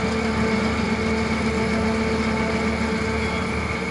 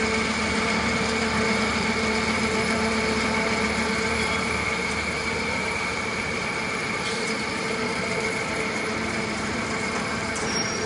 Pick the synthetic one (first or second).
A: second